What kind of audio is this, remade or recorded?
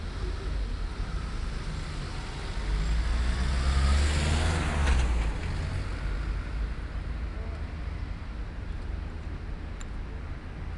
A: recorded